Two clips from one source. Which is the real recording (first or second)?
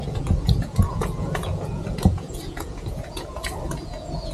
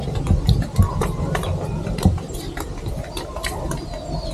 second